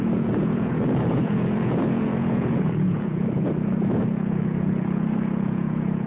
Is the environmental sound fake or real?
fake